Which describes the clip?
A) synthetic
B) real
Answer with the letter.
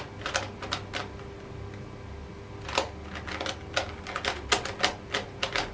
B